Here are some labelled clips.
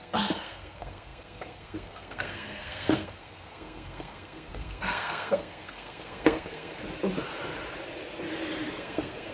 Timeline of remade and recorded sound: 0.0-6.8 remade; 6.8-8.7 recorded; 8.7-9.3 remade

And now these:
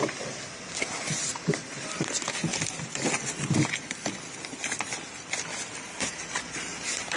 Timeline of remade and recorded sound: 0.0-1.3 recorded; 1.3-2.0 remade; 2.0-2.5 recorded; 2.5-6.5 remade; 6.5-7.2 recorded

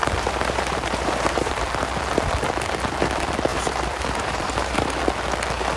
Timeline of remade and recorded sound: 0.0-1.6 remade; 1.6-3.5 recorded; 3.5-5.0 remade; 5.0-5.8 recorded

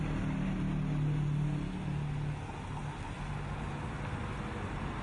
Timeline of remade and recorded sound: 0.0-5.0 recorded

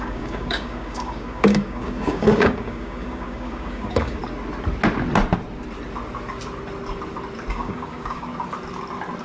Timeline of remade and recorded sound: 0.0-4.2 remade; 4.2-7.5 recorded; 7.5-8.3 remade; 8.3-9.2 recorded

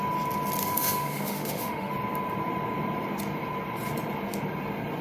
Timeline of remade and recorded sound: 0.0-0.6 recorded; 0.6-1.9 remade; 1.9-5.0 recorded

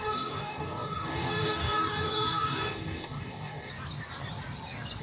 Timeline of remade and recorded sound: 0.0-3.7 remade; 3.7-5.0 recorded

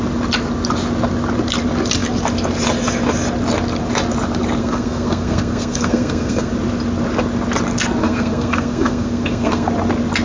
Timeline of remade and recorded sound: 0.0-4.6 recorded; 4.6-6.5 remade; 6.5-8.0 recorded; 8.0-9.7 remade; 9.7-10.2 recorded